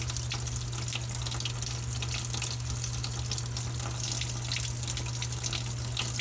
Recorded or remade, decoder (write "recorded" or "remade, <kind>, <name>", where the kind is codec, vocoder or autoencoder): recorded